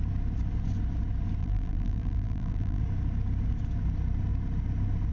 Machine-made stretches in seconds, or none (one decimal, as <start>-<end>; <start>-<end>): 1.4-2.8